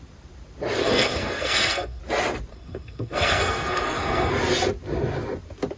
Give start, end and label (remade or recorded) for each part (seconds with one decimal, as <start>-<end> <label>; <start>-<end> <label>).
0.0-0.8 recorded; 0.8-2.0 remade; 2.0-2.5 recorded; 2.5-4.3 remade; 4.3-5.8 recorded